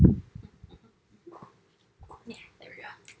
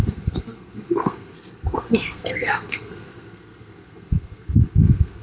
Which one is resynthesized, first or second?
second